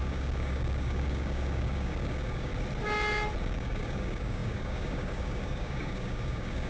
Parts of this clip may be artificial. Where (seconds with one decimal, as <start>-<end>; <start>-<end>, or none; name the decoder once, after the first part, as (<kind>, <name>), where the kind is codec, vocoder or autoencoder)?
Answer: 0.0-2.5 (codec, DAC); 3.4-6.7